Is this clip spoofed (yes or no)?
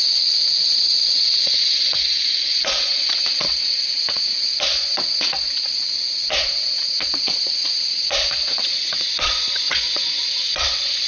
yes